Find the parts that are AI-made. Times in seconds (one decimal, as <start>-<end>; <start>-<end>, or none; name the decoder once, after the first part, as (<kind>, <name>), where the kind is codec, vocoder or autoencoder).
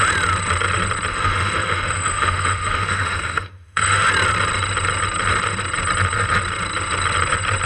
1.1-4.1 (autoencoder, DAC-VAE)